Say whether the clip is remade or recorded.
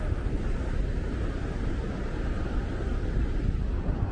recorded